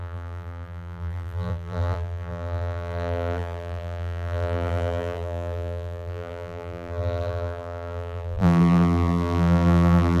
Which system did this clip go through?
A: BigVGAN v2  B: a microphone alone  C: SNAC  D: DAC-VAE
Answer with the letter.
A